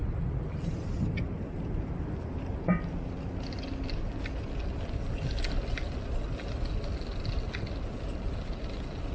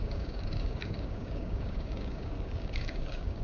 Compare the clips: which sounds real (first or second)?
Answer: first